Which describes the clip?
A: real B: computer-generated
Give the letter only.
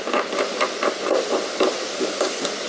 A